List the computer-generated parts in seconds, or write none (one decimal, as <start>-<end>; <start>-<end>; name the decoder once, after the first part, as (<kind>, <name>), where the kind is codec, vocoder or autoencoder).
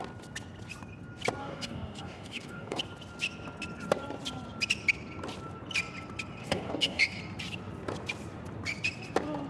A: 1.4-2.8 (codec, DAC); 6.4-7.2